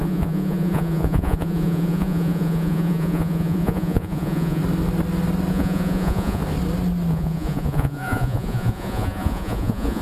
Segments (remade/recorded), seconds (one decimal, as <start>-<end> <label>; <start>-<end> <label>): 0.0-4.6 remade; 4.6-5.5 recorded; 5.5-6.4 remade; 6.4-7.1 recorded; 7.1-10.0 remade